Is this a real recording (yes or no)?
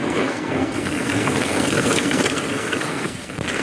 no